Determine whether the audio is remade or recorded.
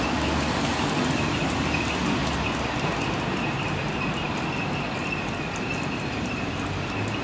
recorded